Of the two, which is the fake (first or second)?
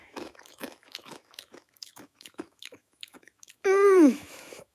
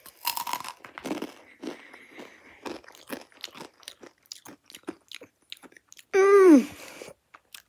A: first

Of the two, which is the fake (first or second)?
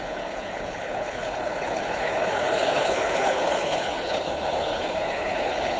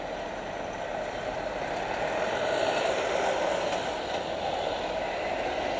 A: first